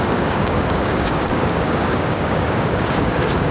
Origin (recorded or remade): remade